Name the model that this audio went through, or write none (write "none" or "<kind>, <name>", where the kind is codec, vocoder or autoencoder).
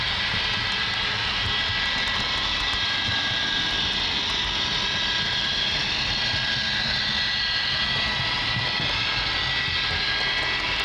none